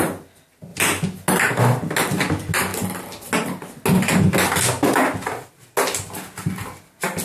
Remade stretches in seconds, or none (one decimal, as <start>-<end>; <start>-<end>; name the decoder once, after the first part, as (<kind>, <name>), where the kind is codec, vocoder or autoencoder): none